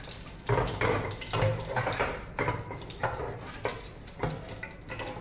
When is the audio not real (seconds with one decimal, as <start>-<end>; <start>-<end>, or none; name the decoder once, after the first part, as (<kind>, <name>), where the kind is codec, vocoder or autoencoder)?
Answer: 1.5-2.6 (vocoder, BigVGAN v2); 3.0-4.2